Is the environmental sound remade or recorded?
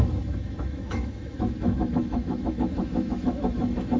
remade